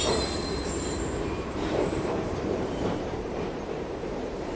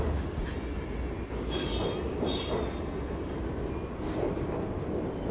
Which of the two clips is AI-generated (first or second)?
first